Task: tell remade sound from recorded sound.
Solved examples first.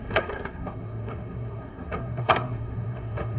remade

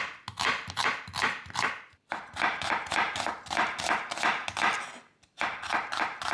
recorded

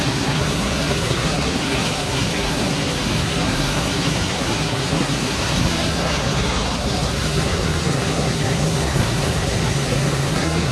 remade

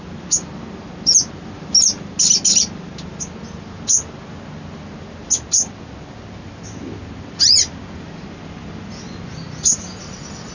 recorded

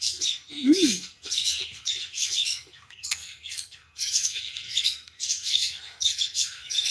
remade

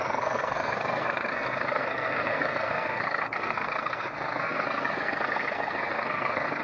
remade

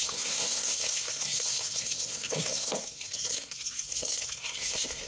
remade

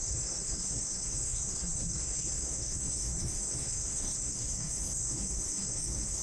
remade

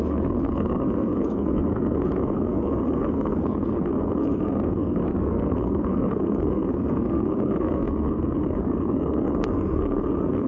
remade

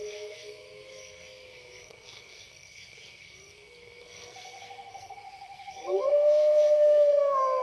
remade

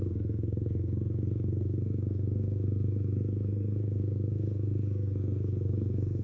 remade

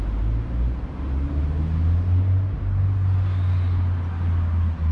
recorded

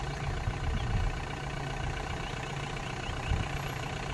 recorded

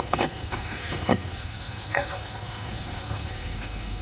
remade